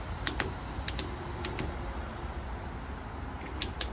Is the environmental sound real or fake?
real